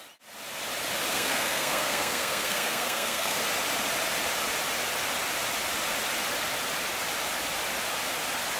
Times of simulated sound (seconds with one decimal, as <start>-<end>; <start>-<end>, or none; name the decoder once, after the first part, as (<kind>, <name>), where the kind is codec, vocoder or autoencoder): 1.1-3.4 (codec, SNAC)